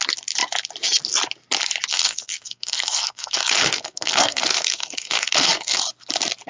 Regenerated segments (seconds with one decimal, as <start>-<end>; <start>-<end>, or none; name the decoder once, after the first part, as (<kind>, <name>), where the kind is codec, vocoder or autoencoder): 1.9-5.8 (codec, SNAC)